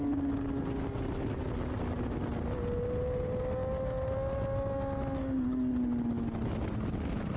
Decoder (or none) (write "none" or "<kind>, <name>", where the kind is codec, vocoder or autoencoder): none